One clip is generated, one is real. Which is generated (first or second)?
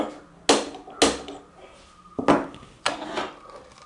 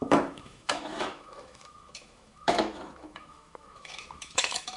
second